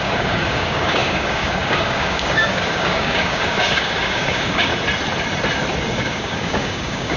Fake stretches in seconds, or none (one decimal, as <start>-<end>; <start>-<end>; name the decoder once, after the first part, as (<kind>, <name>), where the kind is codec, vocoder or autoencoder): 0.0-4.7 (codec, DAC); 5.9-7.2